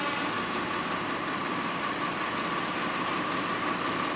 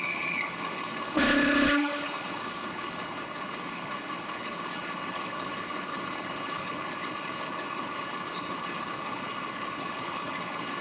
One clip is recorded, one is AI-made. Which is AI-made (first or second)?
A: second